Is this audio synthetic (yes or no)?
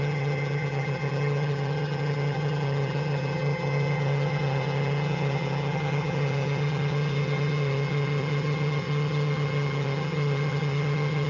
yes